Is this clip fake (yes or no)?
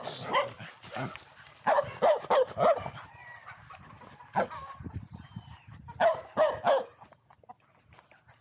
no